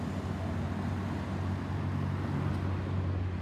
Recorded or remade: recorded